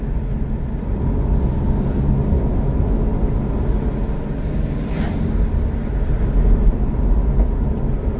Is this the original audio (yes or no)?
yes